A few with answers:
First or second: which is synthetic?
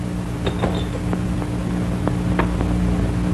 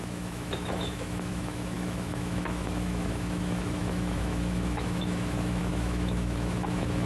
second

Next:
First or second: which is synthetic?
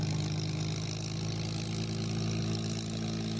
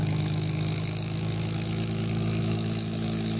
second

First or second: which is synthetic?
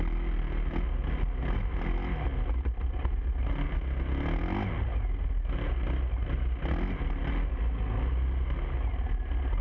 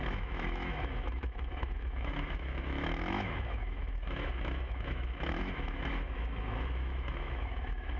second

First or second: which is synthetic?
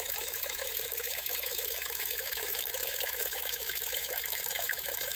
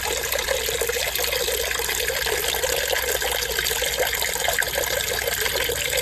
first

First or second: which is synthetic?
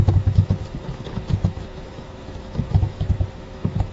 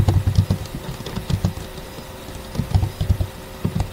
first